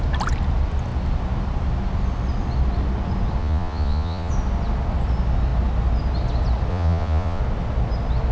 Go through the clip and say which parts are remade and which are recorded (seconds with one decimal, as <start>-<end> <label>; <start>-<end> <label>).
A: 0.0-3.4 recorded; 3.4-4.3 remade; 4.3-6.7 recorded; 6.7-7.4 remade; 7.4-8.3 recorded